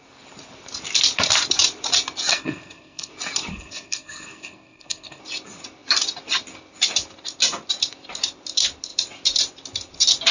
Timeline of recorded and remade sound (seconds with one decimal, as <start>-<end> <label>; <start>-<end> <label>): 0.0-2.3 recorded; 2.3-3.1 remade; 3.1-3.5 recorded; 3.5-5.2 remade; 5.2-10.3 recorded